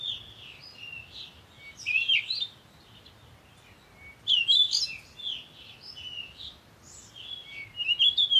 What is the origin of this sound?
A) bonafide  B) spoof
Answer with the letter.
A